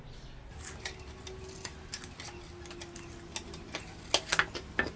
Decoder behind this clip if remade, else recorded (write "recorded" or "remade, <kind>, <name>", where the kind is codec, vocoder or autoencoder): recorded